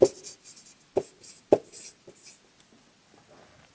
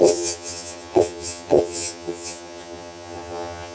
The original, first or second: first